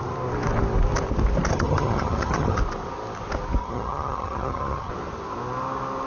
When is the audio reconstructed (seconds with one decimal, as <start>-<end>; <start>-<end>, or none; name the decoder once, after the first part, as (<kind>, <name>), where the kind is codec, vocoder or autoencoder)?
1.5-2.6 (vocoder, HiFi-GAN); 3.6-4.9